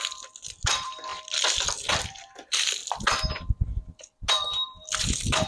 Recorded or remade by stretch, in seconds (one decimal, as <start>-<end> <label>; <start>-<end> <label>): 0.0-5.5 recorded